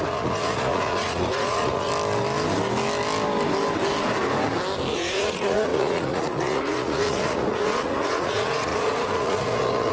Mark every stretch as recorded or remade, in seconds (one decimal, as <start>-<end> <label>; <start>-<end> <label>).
0.0-1.9 remade; 1.9-4.9 recorded; 4.9-9.9 remade